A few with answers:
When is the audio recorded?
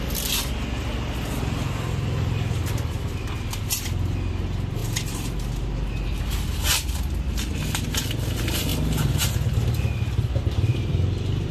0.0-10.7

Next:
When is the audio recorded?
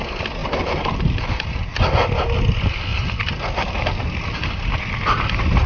0.0-0.4; 1.5-2.9; 4.0-5.7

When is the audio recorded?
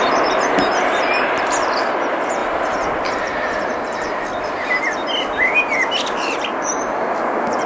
0.0-2.4; 3.2-7.7